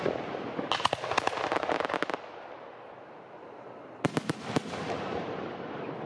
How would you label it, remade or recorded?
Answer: recorded